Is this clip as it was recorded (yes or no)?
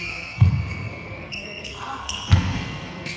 no